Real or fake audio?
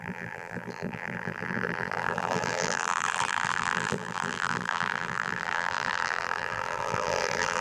fake